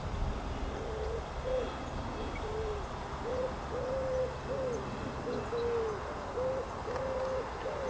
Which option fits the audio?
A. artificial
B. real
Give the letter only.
B